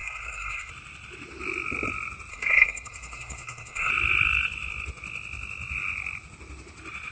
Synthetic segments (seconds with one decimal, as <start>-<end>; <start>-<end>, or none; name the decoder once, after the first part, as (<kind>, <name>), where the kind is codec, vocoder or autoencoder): 0.0-0.7 (codec, SNAC); 2.3-3.9